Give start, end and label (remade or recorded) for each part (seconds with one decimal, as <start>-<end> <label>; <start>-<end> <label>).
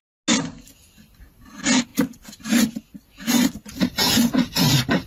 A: 0.0-5.1 recorded